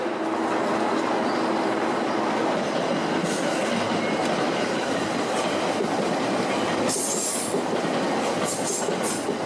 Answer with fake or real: real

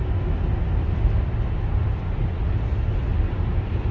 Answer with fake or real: real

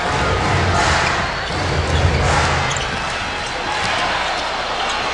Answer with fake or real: real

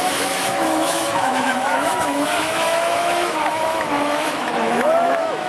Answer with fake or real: fake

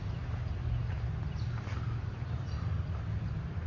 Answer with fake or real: real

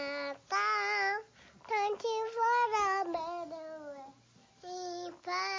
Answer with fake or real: real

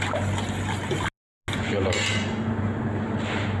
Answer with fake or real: real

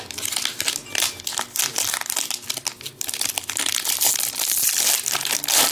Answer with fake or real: real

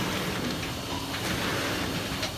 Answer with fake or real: real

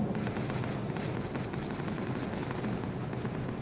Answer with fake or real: real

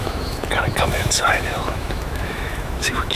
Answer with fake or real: fake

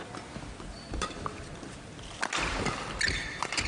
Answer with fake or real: real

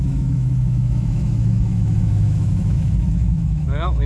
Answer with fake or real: fake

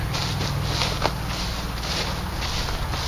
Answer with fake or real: real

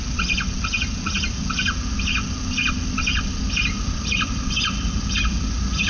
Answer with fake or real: real